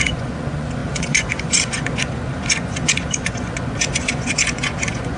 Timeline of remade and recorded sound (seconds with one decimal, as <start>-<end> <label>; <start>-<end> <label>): 0.0-5.2 remade